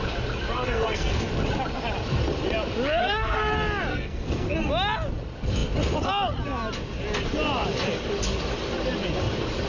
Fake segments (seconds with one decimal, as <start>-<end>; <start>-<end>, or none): 0.6-1.3; 3.0-3.5; 3.9-4.7

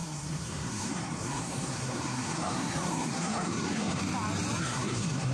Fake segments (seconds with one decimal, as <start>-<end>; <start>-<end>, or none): 0.0-4.0; 4.6-5.3

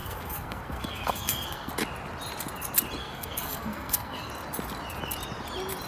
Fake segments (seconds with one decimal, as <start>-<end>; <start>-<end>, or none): 0.0-1.7; 3.0-4.3